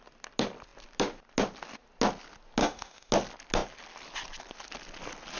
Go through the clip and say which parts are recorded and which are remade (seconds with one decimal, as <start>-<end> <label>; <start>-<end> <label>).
0.0-2.6 recorded; 2.6-3.1 remade; 3.1-5.4 recorded